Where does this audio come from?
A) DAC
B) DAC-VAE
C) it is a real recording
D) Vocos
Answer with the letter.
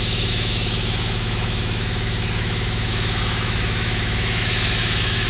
B